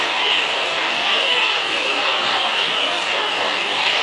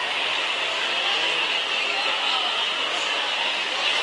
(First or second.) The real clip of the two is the second